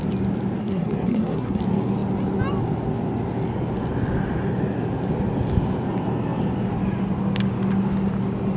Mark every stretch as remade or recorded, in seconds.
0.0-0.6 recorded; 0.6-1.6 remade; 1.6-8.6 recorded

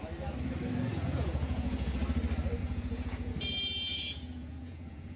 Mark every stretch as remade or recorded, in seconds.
0.0-0.9 recorded; 0.9-2.0 remade; 2.0-2.6 recorded; 2.6-3.3 remade; 3.3-3.9 recorded; 3.9-5.2 remade

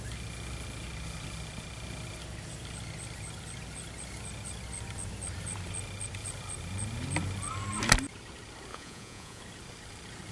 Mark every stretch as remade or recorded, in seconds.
0.0-8.7 recorded; 8.7-9.4 remade; 9.4-10.3 recorded

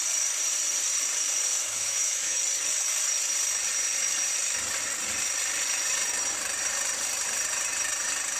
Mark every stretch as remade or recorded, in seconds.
0.0-1.6 recorded; 1.6-2.4 remade; 2.4-8.4 recorded

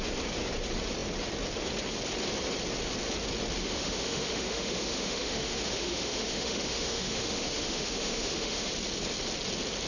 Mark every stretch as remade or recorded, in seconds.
0.0-3.6 recorded; 3.6-8.7 remade; 8.7-9.9 recorded

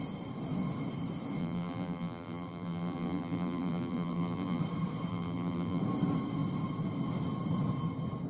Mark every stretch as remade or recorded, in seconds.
0.0-1.4 recorded; 1.4-4.6 remade; 4.6-5.1 recorded; 5.1-5.8 remade; 5.8-8.3 recorded